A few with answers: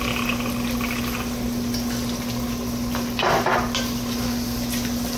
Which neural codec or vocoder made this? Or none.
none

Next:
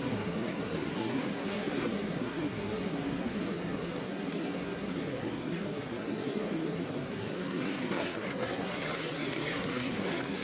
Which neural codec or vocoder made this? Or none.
codec, SNAC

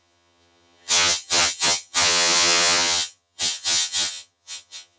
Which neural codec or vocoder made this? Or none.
vocoder, HiFi-GAN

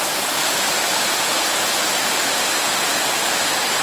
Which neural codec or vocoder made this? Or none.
none